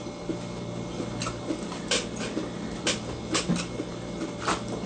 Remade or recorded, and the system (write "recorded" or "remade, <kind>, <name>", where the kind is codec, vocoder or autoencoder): recorded